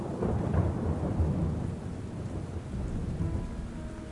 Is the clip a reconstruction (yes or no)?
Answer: no